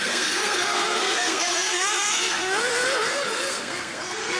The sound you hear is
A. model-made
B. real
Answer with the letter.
A